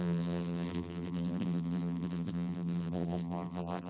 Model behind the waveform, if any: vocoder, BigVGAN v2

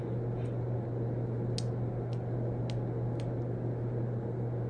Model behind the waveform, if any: none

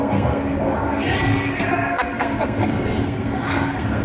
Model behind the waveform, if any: codec, SNAC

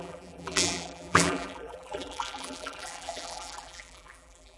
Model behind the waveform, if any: vocoder, BigVGAN v2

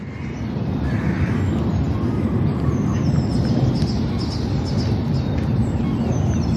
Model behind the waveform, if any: none